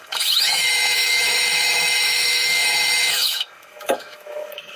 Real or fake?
fake